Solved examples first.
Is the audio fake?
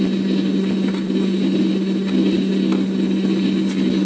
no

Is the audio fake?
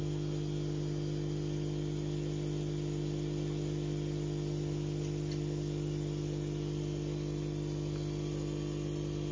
no